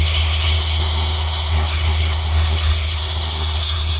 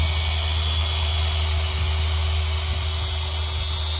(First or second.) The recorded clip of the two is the second